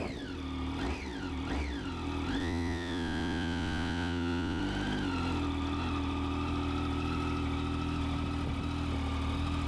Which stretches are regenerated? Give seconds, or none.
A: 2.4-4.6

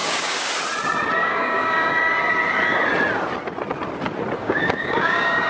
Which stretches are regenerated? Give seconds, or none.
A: 0.0-0.5; 1.2-1.9; 4.4-5.5